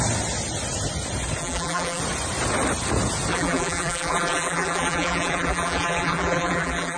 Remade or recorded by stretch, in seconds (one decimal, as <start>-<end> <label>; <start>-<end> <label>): 0.0-1.4 recorded; 1.4-2.0 remade; 2.0-3.3 recorded; 3.3-7.0 remade